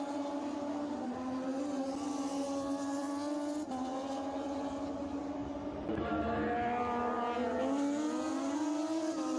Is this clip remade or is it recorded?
recorded